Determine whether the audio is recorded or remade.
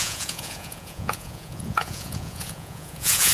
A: remade